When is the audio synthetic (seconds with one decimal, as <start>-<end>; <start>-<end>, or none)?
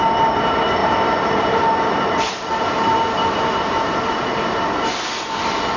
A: 0.8-4.3